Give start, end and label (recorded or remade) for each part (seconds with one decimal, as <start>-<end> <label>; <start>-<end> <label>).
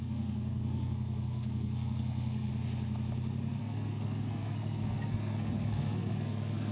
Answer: 0.0-2.5 remade; 2.5-3.6 recorded; 3.6-6.7 remade